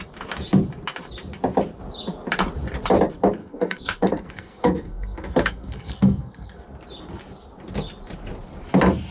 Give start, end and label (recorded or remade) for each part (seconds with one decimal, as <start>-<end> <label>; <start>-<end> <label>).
0.0-3.4 recorded; 3.4-6.6 remade; 6.6-9.1 recorded